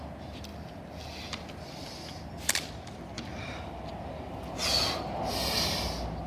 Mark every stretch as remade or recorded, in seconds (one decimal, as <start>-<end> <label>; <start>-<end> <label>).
0.0-6.3 recorded

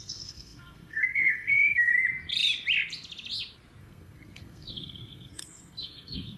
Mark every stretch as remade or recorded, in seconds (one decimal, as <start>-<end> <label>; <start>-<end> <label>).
0.0-1.9 remade; 1.9-3.8 recorded; 3.8-6.4 remade

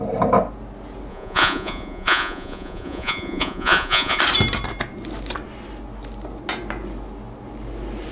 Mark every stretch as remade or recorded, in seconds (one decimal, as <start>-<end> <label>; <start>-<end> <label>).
0.0-1.1 recorded; 1.1-4.2 remade; 4.2-8.1 recorded

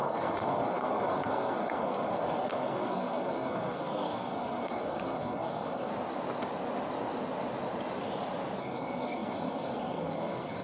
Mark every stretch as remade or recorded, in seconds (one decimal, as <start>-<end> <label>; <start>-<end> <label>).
0.0-5.9 remade; 5.9-8.6 recorded; 8.6-10.6 remade

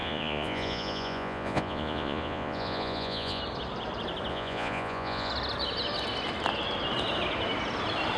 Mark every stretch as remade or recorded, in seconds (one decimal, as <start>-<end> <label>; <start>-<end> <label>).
0.0-3.4 remade; 3.4-4.3 recorded; 4.3-5.3 remade; 5.3-8.2 recorded

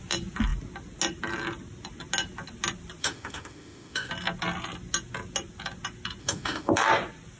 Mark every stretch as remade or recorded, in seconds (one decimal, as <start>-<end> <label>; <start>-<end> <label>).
0.0-3.0 recorded; 3.0-4.1 remade; 4.1-6.2 recorded; 6.2-6.7 remade; 6.7-7.4 recorded

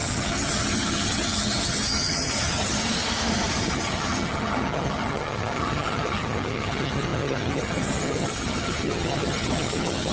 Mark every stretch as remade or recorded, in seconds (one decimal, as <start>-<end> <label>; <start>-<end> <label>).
0.0-2.8 remade; 2.8-3.7 recorded; 3.7-10.1 remade

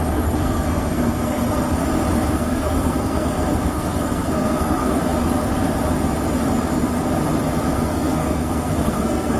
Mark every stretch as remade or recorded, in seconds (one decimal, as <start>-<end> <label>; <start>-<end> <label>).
0.0-1.8 remade; 1.8-2.3 recorded; 2.3-5.0 remade; 5.0-7.7 recorded; 7.7-9.4 remade